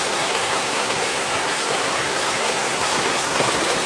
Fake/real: fake